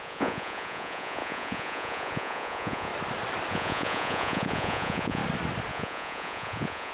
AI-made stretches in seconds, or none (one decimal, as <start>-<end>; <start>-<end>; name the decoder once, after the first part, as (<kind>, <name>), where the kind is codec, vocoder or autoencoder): 0.0-2.9 (vocoder, Vocos); 3.5-5.2; 5.7-6.9